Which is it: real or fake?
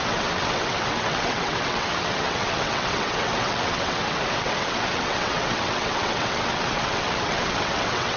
fake